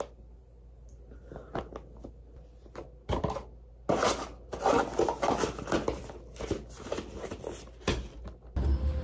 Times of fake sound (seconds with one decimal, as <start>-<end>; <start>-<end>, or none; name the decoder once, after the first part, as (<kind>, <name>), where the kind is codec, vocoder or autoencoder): none